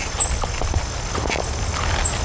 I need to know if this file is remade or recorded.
recorded